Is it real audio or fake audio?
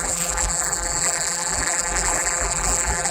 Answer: fake